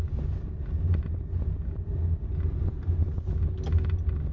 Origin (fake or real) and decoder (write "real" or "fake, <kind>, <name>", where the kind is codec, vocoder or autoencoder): real